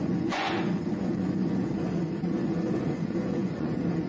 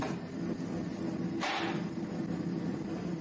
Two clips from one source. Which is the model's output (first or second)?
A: first